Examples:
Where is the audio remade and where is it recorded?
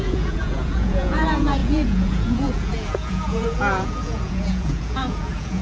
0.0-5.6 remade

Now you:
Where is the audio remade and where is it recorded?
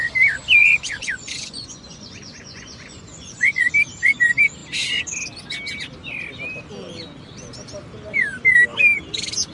0.0-0.6 recorded; 0.6-3.7 remade; 3.7-9.5 recorded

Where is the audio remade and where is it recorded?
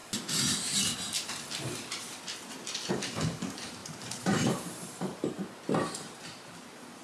0.0-3.8 recorded; 3.8-7.0 remade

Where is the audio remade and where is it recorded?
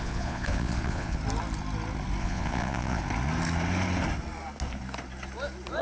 0.0-1.2 remade; 1.2-2.2 recorded; 2.2-3.0 remade; 3.0-5.8 recorded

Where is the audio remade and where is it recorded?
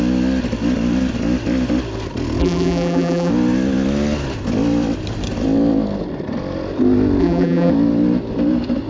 0.0-2.4 recorded; 2.4-3.3 remade; 3.3-7.2 recorded; 7.2-7.7 remade; 7.7-8.9 recorded